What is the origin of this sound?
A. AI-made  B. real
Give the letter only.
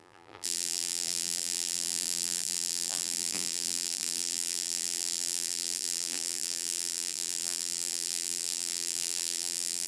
A